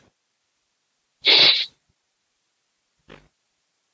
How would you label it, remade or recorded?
recorded